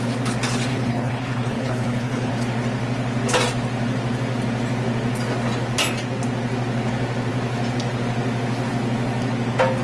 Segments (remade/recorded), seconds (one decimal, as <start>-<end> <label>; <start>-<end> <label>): 0.0-0.7 recorded; 0.7-2.3 remade; 2.3-9.8 recorded